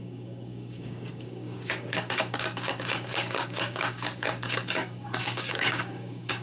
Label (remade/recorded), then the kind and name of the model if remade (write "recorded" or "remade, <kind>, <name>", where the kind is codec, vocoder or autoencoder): remade, codec, DAC